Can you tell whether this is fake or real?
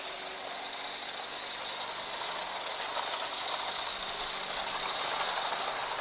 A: real